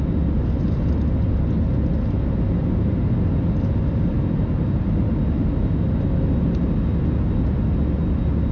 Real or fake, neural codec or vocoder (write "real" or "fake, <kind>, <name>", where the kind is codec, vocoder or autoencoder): real